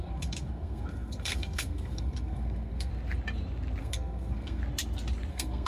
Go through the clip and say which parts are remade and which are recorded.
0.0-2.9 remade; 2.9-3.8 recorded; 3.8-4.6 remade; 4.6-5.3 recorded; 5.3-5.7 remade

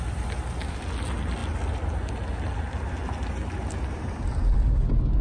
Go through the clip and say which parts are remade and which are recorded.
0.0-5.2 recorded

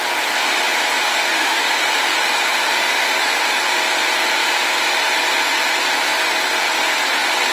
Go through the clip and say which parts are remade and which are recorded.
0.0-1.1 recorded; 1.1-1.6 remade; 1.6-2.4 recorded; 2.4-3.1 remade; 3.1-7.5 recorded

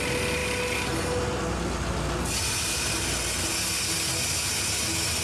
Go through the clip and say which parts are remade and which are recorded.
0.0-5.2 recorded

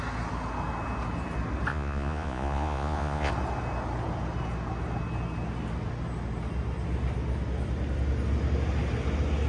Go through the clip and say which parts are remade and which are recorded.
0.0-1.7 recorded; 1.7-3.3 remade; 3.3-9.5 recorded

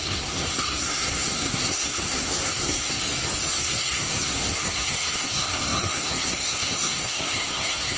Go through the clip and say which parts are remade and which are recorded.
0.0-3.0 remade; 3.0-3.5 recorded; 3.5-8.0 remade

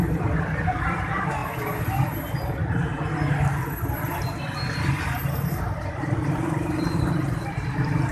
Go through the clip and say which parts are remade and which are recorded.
0.0-1.4 remade; 1.4-5.6 recorded; 5.6-8.1 remade